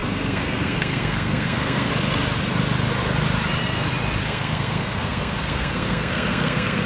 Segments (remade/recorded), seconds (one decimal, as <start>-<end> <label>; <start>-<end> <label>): 0.0-1.9 remade; 1.9-4.2 recorded; 4.2-6.9 remade